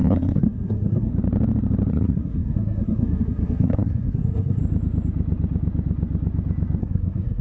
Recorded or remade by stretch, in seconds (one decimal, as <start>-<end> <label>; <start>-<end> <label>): 0.0-1.1 remade; 1.1-1.9 recorded; 1.9-4.6 remade; 4.6-6.8 recorded; 6.8-7.4 remade